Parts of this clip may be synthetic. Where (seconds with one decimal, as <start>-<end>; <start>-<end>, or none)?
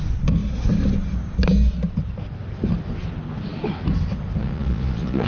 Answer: 4.4-5.3